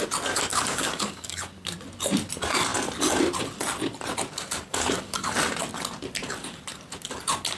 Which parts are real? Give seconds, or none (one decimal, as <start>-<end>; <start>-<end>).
0.0-0.5; 1.4-4.7; 5.3-7.6